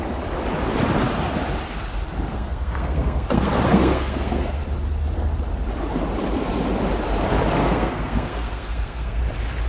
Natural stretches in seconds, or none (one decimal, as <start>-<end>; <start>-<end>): 0.0-2.3; 4.6-7.6; 9.2-9.7